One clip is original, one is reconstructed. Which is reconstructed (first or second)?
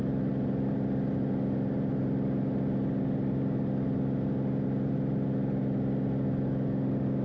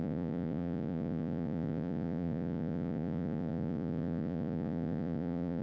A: second